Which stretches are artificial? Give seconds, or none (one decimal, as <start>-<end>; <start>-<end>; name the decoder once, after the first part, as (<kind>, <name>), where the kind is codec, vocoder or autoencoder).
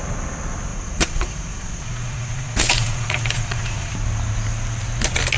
0.7-3.9 (vocoder, Vocos)